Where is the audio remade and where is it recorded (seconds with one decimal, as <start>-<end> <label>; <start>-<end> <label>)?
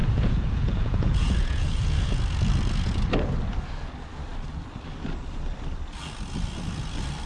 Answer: 0.0-2.2 remade; 2.2-7.3 recorded